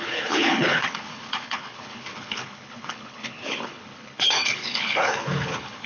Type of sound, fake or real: fake